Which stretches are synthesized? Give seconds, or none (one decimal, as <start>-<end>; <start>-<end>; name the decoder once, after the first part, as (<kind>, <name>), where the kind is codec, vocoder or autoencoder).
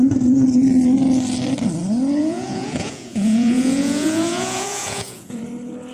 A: 2.2-5.4 (vocoder, Vocos)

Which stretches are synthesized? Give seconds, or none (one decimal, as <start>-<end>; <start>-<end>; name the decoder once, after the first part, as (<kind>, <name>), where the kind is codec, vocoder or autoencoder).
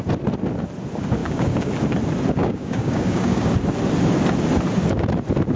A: 1.2-1.7 (codec, DAC); 2.4-3.5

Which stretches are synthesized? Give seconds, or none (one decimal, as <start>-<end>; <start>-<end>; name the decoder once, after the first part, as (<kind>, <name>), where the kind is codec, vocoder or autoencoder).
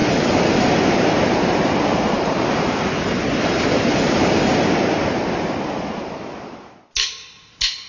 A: 0.0-4.7 (vocoder, BigVGAN v2)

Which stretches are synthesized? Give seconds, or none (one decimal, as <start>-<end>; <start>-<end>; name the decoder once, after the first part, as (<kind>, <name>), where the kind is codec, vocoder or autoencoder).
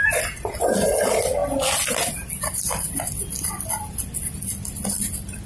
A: none